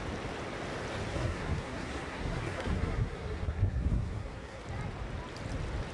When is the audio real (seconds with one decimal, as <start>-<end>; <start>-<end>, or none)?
0.0-1.1; 4.6-5.9